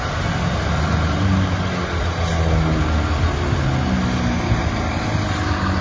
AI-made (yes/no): no